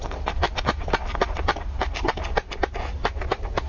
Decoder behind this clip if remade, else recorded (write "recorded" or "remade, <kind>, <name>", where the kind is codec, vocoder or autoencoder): recorded